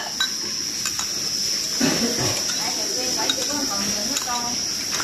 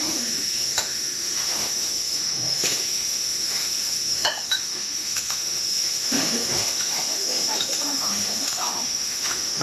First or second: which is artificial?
second